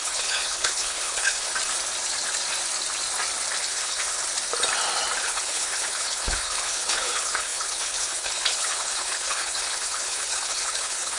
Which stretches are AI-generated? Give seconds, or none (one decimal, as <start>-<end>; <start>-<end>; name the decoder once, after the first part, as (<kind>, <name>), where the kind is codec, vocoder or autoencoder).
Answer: 0.0-1.5 (codec, HILCodec); 3.6-4.2; 5.2-11.2